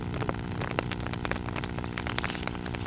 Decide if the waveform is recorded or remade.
recorded